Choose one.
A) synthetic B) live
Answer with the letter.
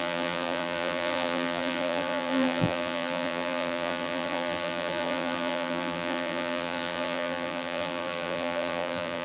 A